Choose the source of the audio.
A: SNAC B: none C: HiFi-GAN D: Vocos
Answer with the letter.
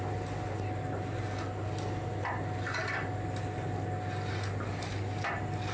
B